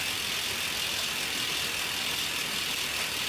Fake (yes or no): no